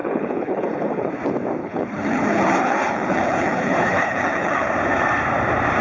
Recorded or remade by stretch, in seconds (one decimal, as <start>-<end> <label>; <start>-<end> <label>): 0.0-1.1 remade; 1.1-1.6 recorded; 1.6-4.7 remade; 4.7-5.8 recorded